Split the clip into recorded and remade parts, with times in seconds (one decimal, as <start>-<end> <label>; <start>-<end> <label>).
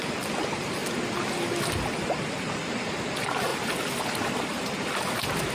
0.0-0.8 remade; 0.8-2.7 recorded; 2.7-3.5 remade; 3.5-5.5 recorded